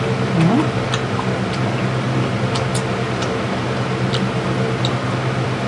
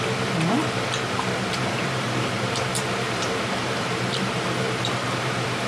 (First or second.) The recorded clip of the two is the first